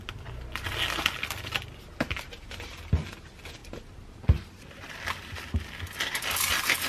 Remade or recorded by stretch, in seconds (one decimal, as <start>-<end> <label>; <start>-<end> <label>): 0.0-3.6 recorded; 3.6-4.4 remade; 4.4-6.9 recorded